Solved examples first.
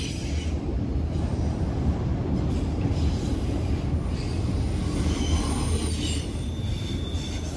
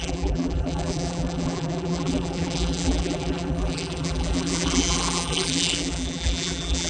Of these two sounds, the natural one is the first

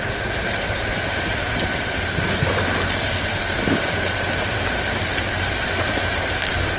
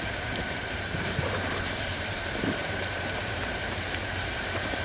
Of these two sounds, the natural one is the first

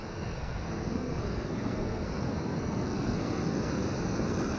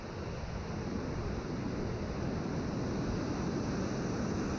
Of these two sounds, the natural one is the second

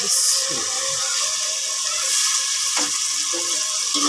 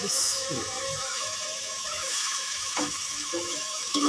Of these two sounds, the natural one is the first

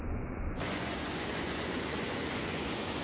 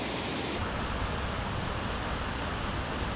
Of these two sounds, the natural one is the second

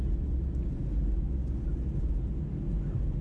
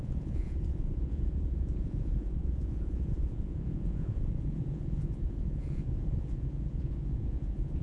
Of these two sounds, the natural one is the first